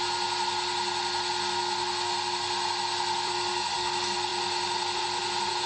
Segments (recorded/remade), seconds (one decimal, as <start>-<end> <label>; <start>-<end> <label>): 0.0-5.7 recorded